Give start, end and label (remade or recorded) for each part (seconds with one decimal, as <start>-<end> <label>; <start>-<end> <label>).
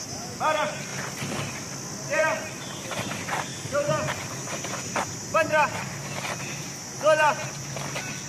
0.0-8.3 recorded